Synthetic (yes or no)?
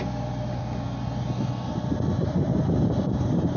no